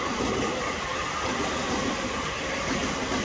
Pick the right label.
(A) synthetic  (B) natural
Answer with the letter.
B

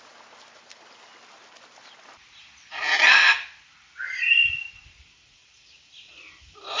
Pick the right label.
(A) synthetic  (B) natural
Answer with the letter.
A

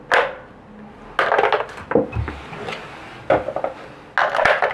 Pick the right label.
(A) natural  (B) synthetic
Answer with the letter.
A